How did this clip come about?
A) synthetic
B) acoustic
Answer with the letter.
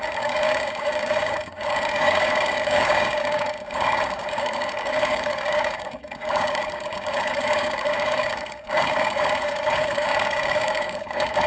A